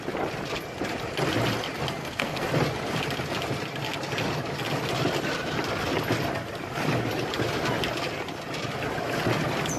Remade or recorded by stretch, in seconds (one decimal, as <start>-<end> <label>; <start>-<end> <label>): 0.0-2.0 recorded; 2.0-2.5 remade; 2.5-9.8 recorded